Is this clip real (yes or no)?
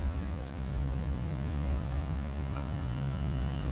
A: no